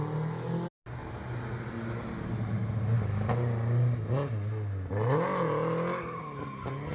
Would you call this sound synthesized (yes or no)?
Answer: no